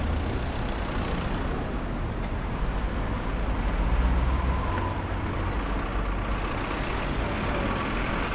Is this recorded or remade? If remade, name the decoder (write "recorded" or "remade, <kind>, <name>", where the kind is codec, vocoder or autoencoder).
recorded